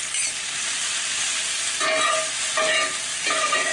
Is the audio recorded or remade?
recorded